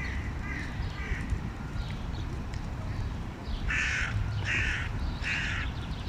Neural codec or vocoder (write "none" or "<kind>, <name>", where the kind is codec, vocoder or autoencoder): vocoder, BigVGAN v2